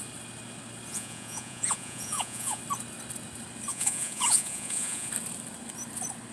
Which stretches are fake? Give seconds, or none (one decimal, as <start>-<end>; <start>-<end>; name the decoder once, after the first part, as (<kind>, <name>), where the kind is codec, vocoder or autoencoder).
0.9-2.6 (vocoder, Vocos); 3.7-5.1